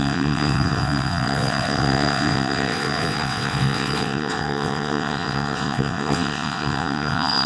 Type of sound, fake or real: fake